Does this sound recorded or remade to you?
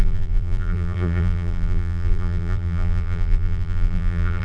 remade